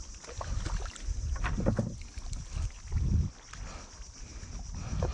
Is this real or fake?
real